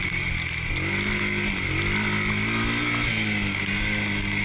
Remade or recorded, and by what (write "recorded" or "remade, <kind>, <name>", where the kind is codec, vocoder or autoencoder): recorded